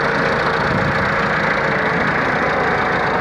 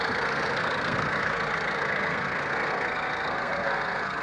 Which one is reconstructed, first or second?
second